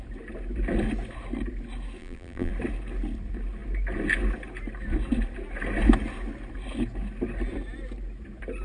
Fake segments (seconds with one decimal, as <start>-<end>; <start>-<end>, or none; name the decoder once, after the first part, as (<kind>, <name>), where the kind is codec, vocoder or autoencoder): 2.0-2.5 (vocoder, BigVGAN v2)